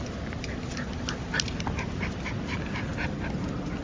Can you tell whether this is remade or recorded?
recorded